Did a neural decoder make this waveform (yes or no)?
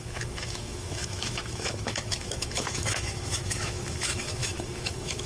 yes